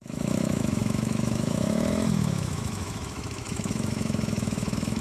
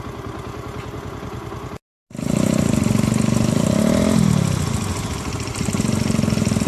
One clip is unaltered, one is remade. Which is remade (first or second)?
first